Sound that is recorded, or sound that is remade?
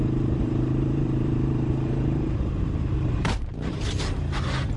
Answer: remade